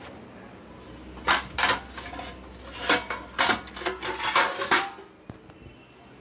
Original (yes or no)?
yes